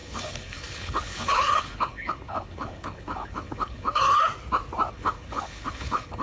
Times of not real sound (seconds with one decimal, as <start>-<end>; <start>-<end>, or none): 0.0-4.3; 4.9-6.2